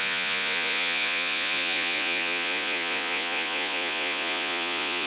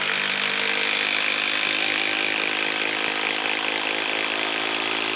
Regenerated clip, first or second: first